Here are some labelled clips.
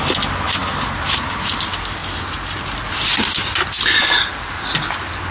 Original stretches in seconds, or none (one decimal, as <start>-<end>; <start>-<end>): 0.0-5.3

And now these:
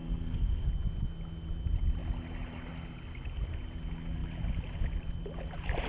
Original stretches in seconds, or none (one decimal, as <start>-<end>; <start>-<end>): 0.7-5.9

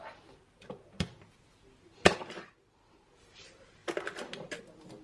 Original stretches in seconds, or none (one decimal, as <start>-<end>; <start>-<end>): 0.0-5.0

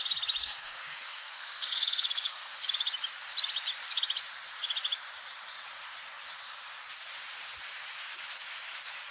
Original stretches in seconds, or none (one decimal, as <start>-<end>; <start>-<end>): 0.0-0.4; 2.6-9.1

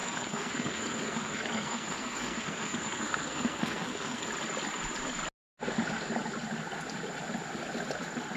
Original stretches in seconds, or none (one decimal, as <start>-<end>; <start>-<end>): 4.3-8.4